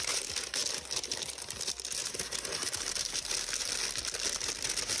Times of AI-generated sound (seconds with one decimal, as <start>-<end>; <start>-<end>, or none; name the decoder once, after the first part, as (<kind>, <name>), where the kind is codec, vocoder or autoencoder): none